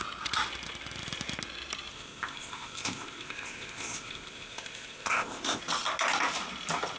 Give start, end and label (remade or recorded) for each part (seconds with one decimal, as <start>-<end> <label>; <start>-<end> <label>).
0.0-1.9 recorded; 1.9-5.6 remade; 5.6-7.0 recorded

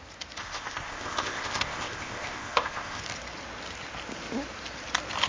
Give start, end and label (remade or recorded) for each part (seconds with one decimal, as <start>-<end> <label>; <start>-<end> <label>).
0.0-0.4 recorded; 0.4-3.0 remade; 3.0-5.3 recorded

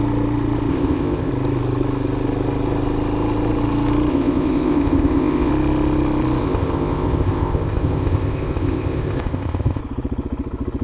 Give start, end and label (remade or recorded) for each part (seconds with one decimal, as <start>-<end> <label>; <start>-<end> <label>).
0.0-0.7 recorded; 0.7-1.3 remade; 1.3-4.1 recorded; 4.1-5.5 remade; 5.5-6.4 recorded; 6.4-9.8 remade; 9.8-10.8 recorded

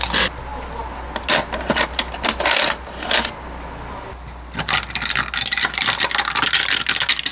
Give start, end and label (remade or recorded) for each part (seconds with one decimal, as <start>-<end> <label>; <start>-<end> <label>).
0.0-7.3 recorded

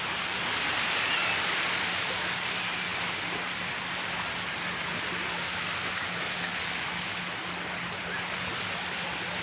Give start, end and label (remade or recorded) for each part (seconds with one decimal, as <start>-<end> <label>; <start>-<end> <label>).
0.0-9.4 recorded